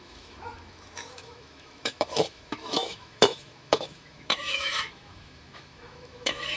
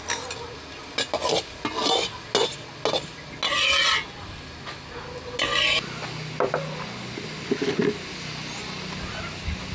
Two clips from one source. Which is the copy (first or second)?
first